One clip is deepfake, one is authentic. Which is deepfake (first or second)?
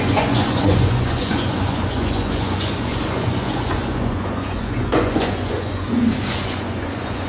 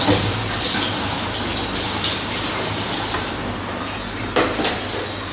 first